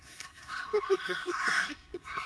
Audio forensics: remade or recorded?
remade